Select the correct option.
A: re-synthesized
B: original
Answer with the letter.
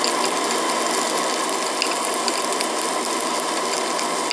B